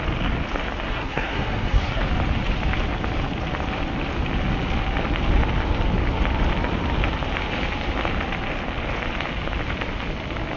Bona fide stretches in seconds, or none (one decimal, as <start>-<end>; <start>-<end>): 0.0-0.9; 2.0-10.6